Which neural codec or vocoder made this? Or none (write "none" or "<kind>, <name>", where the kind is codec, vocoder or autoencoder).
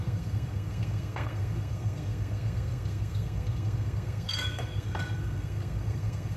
codec, SNAC